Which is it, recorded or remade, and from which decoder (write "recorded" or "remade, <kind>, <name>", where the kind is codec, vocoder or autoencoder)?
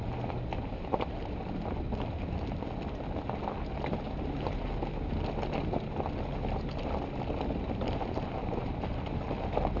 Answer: recorded